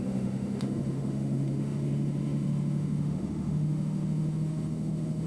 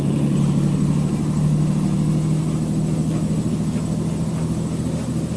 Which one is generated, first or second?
first